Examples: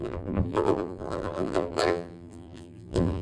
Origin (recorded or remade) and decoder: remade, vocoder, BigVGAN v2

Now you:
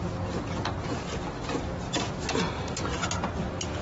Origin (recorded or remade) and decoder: recorded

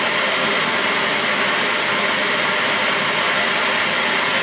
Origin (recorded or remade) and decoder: recorded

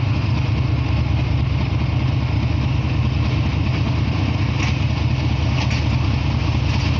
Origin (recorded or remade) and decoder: recorded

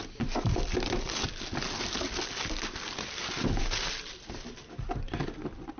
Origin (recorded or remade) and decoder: recorded